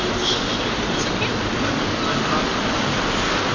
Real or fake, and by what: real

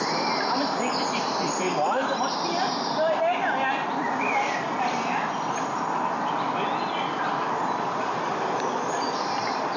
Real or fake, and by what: real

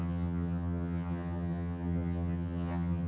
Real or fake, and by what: fake, vocoder, HiFi-GAN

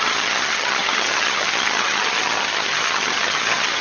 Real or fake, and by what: fake, vocoder, HiFi-GAN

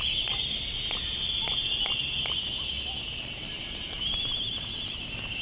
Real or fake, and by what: real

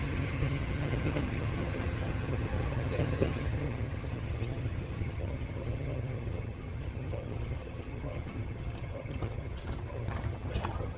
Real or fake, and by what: fake, vocoder, HiFi-GAN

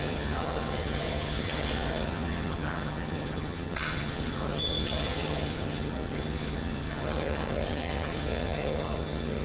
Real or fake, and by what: fake, vocoder, HiFi-GAN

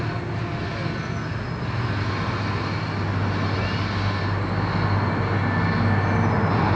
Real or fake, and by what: real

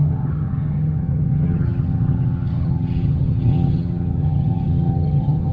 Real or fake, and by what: fake, vocoder, HiFi-GAN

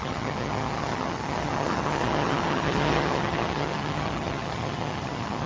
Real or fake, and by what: fake, vocoder, HiFi-GAN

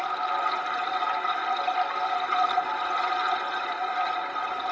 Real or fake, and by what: real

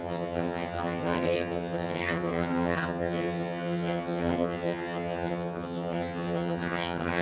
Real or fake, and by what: fake, vocoder, HiFi-GAN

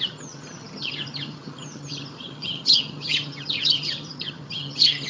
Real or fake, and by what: fake, vocoder, HiFi-GAN